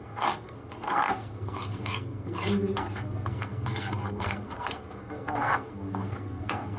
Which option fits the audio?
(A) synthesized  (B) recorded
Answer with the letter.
A